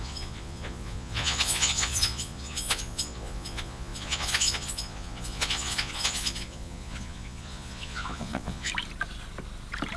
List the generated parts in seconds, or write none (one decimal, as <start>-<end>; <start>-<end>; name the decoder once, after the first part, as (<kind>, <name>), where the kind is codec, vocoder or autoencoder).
0.0-8.7 (vocoder, Vocos)